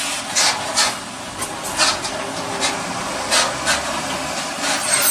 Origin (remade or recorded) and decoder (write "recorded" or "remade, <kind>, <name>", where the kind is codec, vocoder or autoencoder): recorded